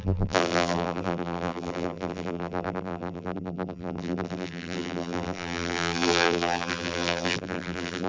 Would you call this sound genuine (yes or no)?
no